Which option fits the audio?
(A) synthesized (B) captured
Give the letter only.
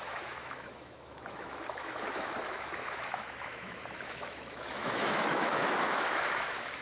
A